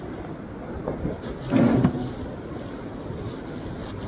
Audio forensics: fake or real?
real